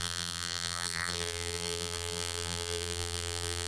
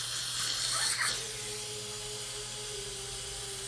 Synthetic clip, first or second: first